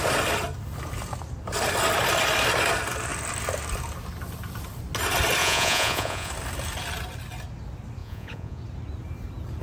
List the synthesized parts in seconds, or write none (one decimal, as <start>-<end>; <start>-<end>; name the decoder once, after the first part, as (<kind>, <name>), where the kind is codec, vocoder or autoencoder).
5.4-6.3 (vocoder, Vocos); 8.0-8.6